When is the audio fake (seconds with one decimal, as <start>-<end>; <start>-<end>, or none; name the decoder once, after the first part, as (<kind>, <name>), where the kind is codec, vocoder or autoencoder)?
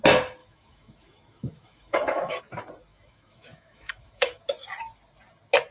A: 0.4-2.4 (autoencoder, DAC-VAE); 2.9-4.4